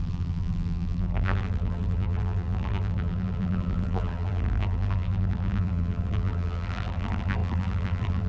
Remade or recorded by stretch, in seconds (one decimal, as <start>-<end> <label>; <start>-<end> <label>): 0.0-8.3 remade